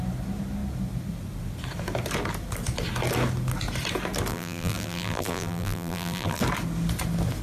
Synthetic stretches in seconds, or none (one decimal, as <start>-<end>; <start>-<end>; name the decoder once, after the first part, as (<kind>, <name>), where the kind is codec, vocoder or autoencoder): 4.3-6.4 (vocoder, BigVGAN v2)